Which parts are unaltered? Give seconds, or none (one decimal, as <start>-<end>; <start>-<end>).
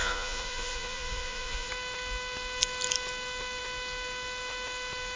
1.7-5.2